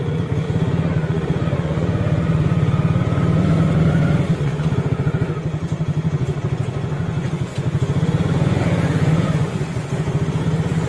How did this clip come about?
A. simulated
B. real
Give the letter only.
A